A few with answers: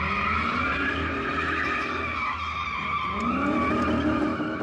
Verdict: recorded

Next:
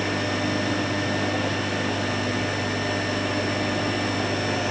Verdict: recorded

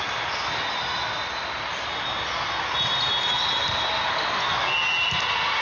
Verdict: recorded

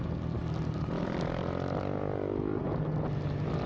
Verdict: recorded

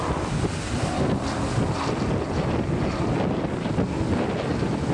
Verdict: recorded